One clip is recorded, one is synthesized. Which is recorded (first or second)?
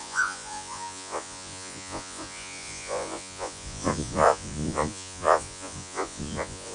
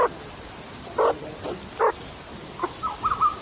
second